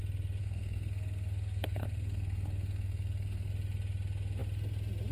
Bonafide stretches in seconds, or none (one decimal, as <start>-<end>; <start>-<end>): 0.0-0.4; 3.5-5.1